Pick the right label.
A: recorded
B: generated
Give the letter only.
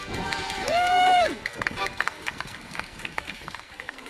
B